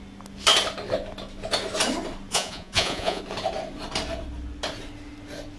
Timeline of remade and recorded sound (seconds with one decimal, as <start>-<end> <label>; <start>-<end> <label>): 0.0-2.3 recorded; 2.3-3.2 remade; 3.2-5.6 recorded